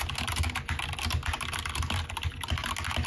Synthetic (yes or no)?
no